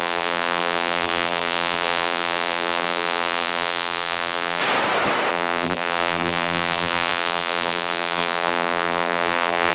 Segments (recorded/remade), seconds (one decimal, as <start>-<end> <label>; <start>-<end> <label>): 0.0-4.6 remade; 4.6-5.3 recorded; 5.3-9.7 remade